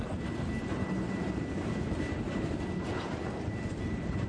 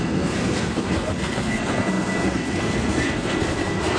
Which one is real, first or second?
first